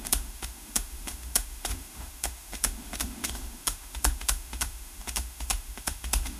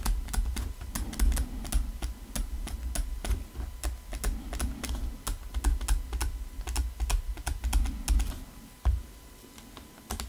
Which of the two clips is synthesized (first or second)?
first